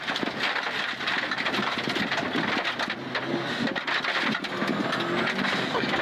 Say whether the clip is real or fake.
real